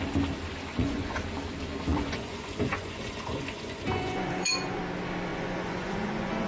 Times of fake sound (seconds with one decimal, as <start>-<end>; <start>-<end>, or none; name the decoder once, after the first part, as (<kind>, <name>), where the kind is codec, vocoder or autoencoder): 0.7-1.2 (vocoder, Vocos); 1.9-4.8; 5.3-6.5